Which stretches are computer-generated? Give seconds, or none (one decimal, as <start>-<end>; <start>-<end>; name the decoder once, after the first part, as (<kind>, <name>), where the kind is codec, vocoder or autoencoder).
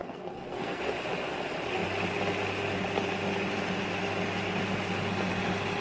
0.0-0.8 (codec, SNAC)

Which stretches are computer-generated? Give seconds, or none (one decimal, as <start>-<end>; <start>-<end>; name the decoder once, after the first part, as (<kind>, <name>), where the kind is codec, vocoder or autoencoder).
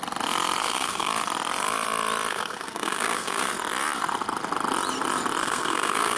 0.6-1.1 (codec, SNAC); 2.3-3.5; 5.4-6.2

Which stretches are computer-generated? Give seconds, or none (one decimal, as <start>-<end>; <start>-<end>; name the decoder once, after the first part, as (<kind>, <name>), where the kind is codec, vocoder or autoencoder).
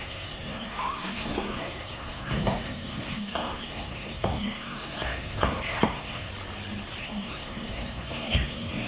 0.0-6.3 (codec, SNAC); 7.0-8.9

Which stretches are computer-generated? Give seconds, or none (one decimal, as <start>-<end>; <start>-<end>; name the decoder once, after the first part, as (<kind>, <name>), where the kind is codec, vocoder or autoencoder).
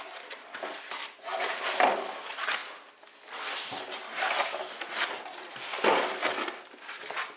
none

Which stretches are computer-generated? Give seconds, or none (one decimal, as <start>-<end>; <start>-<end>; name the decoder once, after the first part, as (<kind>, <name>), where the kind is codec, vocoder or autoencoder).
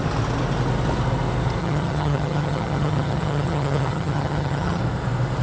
1.6-4.8 (vocoder, HiFi-GAN)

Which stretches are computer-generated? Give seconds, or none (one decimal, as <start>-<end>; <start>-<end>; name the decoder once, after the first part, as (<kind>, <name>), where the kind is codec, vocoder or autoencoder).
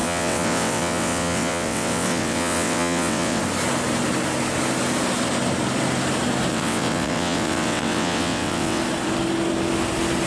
0.0-3.4 (vocoder, WaveNeXt); 6.5-8.8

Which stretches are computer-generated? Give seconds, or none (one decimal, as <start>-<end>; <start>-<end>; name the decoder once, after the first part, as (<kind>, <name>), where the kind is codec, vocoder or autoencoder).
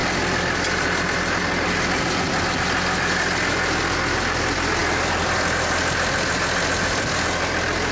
none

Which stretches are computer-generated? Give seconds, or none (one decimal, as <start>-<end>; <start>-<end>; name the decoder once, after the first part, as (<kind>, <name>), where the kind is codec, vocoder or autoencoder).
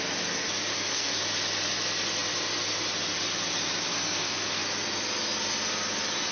0.7-1.2 (codec, SNAC); 3.9-4.6